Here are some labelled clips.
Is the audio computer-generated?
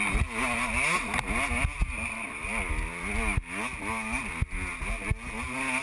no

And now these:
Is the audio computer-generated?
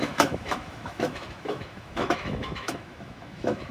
yes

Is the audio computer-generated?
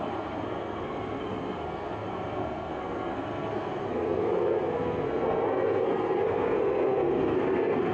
yes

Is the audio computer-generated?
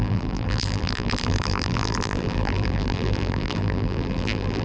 yes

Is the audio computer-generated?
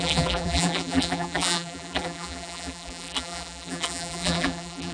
yes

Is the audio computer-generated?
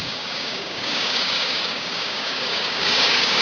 yes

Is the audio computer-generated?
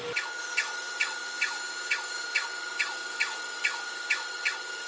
no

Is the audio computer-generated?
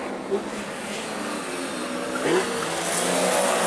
no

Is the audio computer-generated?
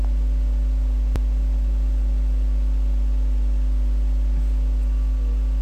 no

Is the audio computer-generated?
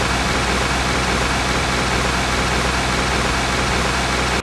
no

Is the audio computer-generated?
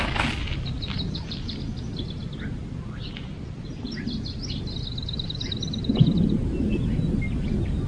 no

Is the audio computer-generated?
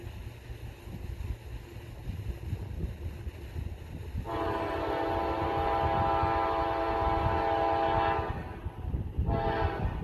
no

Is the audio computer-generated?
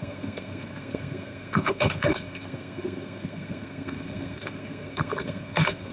yes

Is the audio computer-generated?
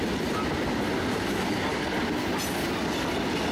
no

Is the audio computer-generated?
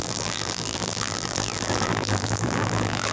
yes